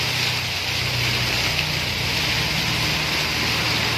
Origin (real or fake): real